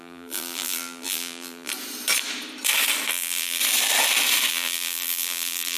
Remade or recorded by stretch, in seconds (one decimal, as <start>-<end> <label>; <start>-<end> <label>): 0.0-1.7 remade; 1.7-3.1 recorded; 3.1-3.6 remade; 3.6-4.5 recorded; 4.5-5.8 remade